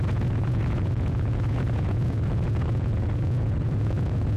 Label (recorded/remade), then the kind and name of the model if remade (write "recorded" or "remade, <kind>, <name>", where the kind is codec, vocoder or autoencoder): remade, vocoder, Vocos